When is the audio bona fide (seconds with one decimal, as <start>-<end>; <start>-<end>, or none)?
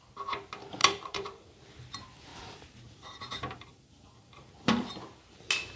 0.0-0.8; 1.5-2.3; 4.9-5.8